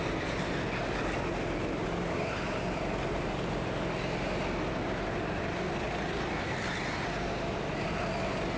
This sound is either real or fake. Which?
real